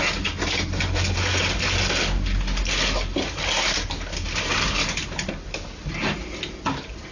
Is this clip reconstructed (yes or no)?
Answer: no